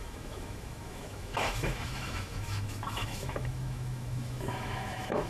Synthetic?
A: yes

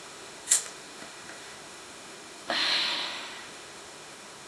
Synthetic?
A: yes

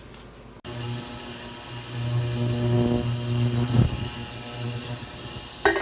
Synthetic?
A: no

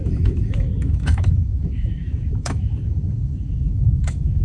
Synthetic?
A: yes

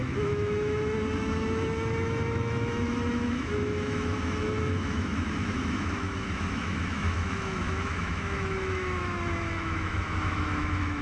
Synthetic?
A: yes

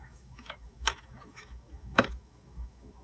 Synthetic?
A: yes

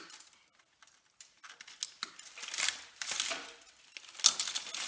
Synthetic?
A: no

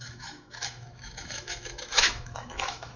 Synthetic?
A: yes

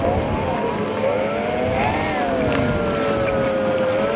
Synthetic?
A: no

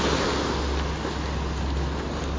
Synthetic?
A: no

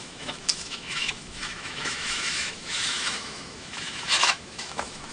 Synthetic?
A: yes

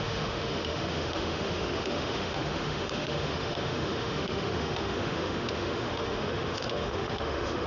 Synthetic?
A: yes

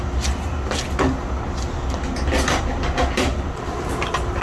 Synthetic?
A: no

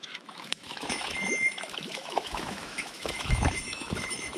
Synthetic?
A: yes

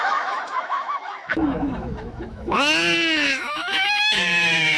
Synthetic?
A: yes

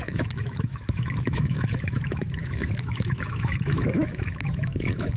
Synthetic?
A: yes